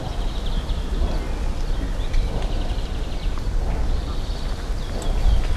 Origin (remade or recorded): recorded